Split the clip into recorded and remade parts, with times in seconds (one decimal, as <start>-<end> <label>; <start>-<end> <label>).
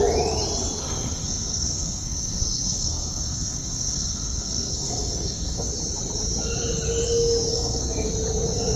0.0-0.8 recorded; 0.8-5.7 remade; 5.7-7.5 recorded; 7.5-8.1 remade; 8.1-8.8 recorded